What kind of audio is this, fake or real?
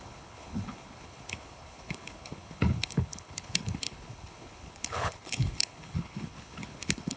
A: fake